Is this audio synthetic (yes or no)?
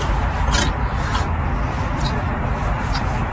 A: no